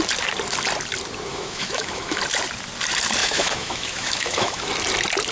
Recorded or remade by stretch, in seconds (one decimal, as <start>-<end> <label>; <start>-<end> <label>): 0.0-1.3 recorded; 1.3-2.2 remade; 2.2-3.2 recorded; 3.2-4.7 remade; 4.7-5.3 recorded